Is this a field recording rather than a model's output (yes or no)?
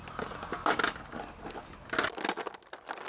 yes